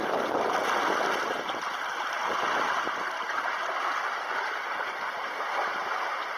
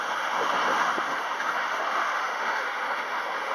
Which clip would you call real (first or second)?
first